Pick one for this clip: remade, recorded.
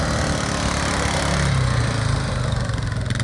recorded